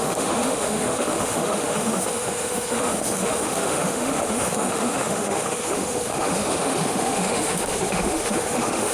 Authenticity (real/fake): fake